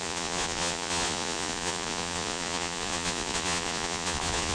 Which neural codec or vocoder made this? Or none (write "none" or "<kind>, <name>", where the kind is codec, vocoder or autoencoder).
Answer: vocoder, Vocos